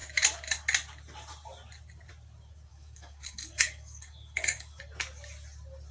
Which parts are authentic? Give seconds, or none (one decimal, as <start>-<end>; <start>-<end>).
0.0-2.7; 4.8-5.9